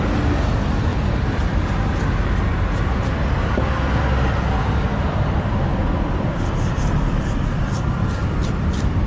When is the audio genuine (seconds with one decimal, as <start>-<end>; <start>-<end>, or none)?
0.0-0.9; 1.7-4.9